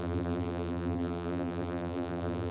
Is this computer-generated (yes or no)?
yes